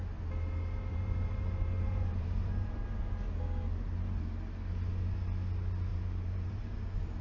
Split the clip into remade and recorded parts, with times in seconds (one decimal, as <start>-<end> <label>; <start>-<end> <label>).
0.0-0.9 recorded; 0.9-2.8 remade; 2.8-5.9 recorded; 5.9-6.6 remade; 6.6-7.2 recorded